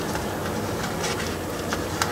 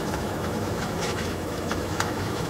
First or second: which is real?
first